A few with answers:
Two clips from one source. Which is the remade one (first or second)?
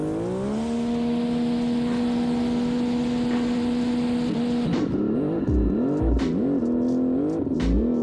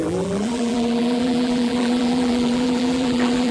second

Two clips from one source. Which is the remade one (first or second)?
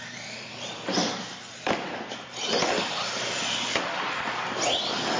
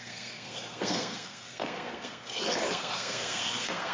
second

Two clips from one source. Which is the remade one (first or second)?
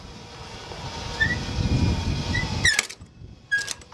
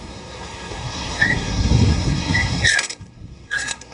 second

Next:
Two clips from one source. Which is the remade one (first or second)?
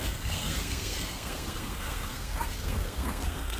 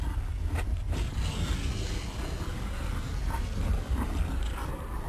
first